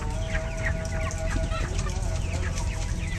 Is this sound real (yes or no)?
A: yes